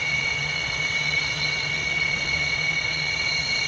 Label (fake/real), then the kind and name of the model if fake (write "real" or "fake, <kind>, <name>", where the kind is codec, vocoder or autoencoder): fake, vocoder, WaveNeXt